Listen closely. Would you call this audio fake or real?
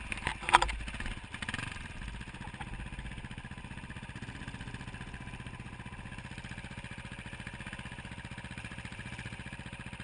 real